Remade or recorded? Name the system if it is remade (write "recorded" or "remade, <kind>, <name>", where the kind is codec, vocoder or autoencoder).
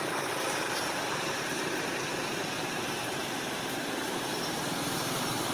remade, vocoder, BigVGAN v2